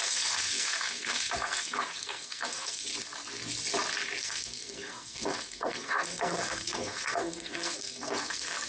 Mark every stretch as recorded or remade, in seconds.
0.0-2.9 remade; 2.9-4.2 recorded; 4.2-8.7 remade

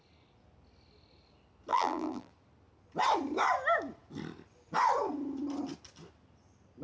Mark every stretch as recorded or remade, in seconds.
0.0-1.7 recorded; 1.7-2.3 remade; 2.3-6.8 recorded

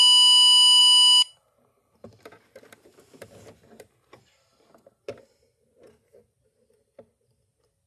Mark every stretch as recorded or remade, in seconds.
0.0-7.9 recorded

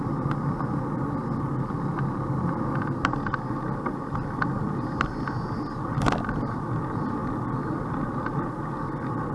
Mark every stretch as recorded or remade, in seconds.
0.0-9.3 recorded

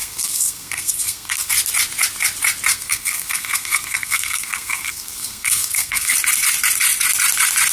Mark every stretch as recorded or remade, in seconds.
0.0-1.5 remade; 1.5-2.7 recorded; 2.7-6.1 remade; 6.1-7.7 recorded

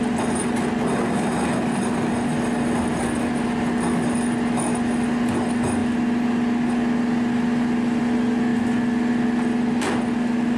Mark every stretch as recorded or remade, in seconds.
0.0-10.6 recorded